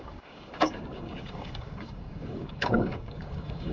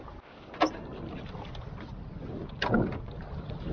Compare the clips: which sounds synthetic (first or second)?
first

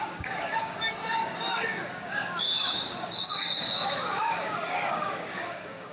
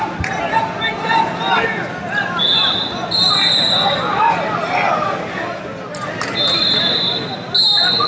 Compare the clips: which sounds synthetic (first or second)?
first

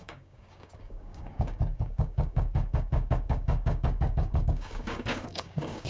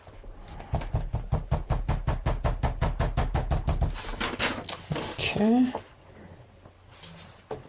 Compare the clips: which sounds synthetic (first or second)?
first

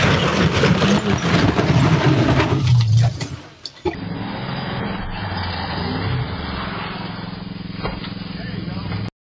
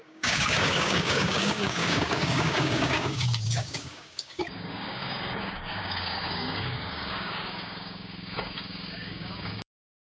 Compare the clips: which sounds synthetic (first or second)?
second